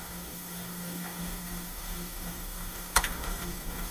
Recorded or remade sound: remade